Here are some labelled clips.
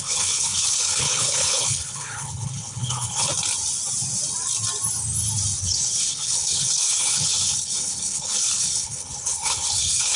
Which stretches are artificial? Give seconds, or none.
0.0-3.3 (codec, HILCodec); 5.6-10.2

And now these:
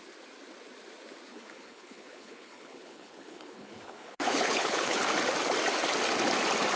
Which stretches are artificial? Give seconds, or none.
1.3-5.0 (codec, HILCodec)

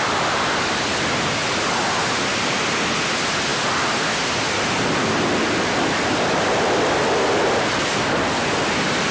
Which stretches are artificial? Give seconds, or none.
none

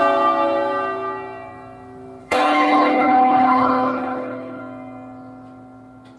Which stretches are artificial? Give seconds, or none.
2.2-4.6 (codec, HILCodec)

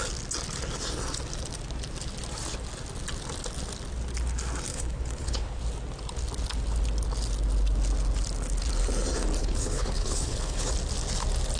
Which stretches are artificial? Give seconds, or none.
4.7-5.6 (codec, HILCodec); 9.4-10.7

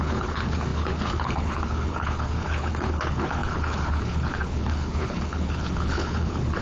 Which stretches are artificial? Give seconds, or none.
0.0-6.6 (codec, HILCodec)